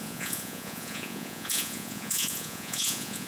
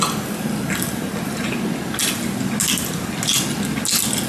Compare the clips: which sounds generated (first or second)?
first